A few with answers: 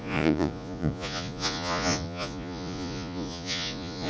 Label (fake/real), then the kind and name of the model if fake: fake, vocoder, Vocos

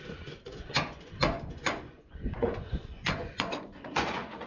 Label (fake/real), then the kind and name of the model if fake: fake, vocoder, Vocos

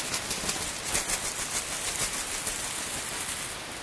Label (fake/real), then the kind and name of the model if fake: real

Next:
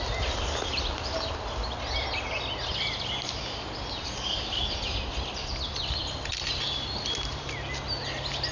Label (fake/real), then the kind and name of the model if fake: real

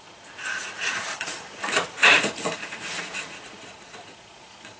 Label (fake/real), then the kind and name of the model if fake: fake, vocoder, Vocos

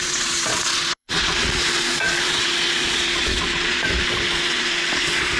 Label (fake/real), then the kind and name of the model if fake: fake, vocoder, Vocos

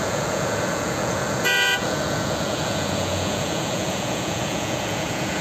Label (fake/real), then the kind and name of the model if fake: fake, vocoder, Vocos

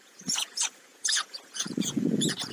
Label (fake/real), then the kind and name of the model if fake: fake, vocoder, Vocos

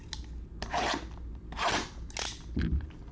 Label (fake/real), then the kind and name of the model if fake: real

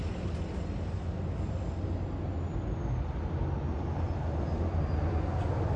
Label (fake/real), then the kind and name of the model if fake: real